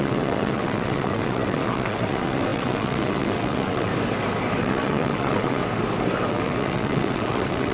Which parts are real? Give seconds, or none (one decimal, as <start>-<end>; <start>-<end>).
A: 3.9-4.6; 5.6-6.3